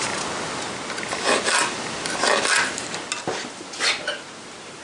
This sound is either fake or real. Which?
real